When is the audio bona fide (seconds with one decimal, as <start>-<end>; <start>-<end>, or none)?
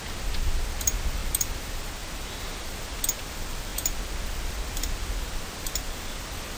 0.0-6.6